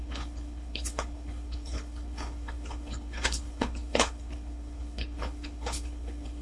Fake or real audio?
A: fake